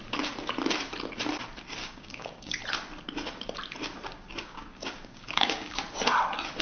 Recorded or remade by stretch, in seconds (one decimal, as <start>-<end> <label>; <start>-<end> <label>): 0.0-1.8 recorded; 1.8-2.6 remade; 2.6-4.1 recorded; 4.1-5.8 remade; 5.8-6.6 recorded

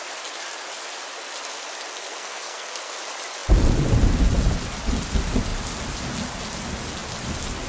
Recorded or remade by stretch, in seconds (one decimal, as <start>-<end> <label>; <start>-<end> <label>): 0.0-2.0 recorded; 2.0-2.9 remade; 2.9-7.7 recorded